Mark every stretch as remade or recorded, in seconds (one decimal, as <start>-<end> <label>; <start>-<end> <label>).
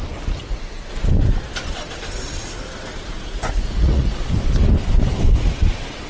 0.0-0.4 recorded; 0.4-0.9 remade; 0.9-2.9 recorded; 2.9-4.1 remade; 4.1-6.1 recorded